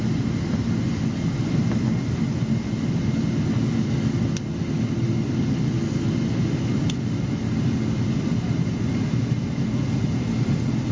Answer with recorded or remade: recorded